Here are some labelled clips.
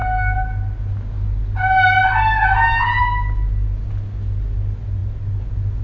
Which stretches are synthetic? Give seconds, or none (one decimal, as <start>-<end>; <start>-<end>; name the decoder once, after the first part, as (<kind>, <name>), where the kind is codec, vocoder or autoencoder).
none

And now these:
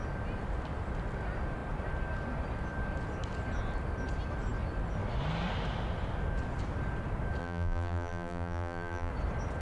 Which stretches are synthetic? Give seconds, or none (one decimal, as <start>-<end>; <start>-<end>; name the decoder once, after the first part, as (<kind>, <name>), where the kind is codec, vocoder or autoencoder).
7.4-9.1 (vocoder, BigVGAN v2)

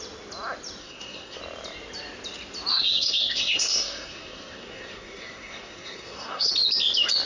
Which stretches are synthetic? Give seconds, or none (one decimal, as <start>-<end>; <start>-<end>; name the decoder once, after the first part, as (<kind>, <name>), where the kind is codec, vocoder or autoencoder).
0.8-1.4 (codec, SNAC); 2.7-6.5